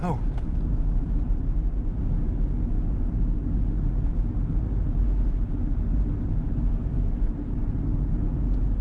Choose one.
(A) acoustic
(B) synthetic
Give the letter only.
A